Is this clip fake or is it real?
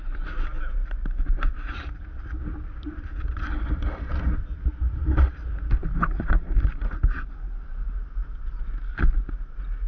real